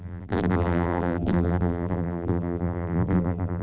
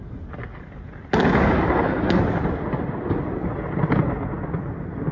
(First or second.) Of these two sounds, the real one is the second